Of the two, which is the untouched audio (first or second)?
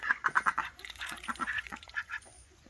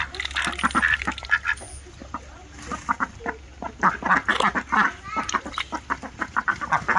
second